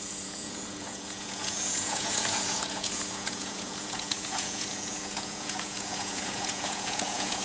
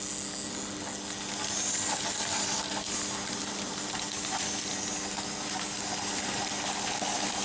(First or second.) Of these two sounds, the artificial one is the first